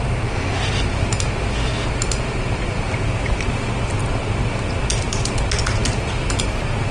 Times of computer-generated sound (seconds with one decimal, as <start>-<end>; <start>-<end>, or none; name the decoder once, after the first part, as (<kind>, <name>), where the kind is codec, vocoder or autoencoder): none